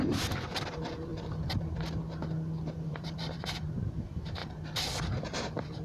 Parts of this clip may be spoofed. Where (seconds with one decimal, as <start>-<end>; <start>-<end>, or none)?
0.0-1.1; 2.8-4.4; 5.0-5.8